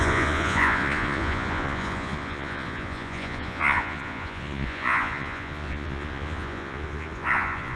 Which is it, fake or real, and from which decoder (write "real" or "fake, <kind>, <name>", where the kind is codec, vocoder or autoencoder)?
fake, vocoder, Vocos